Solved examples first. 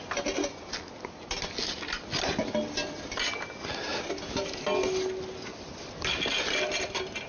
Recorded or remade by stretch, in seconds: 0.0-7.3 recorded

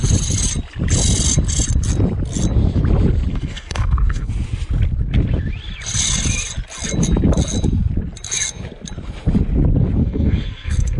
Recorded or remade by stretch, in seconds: 0.0-3.3 recorded; 3.3-4.3 remade; 4.3-10.0 recorded; 10.0-11.0 remade

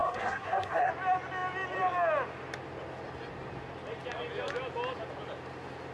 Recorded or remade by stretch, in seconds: 0.0-0.9 remade; 0.9-5.9 recorded

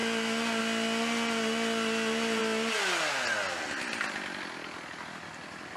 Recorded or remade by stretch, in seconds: 0.0-5.8 recorded

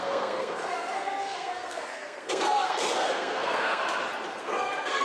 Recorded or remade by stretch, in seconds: 0.0-3.8 remade; 3.8-4.4 recorded; 4.4-5.0 remade